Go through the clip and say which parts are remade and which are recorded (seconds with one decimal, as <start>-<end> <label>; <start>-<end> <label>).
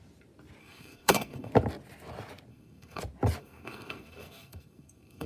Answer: 0.0-0.6 recorded; 0.6-1.5 remade; 1.5-2.5 recorded; 2.5-3.0 remade; 3.0-3.4 recorded; 3.4-5.3 remade